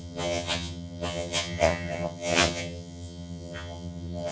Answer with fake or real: fake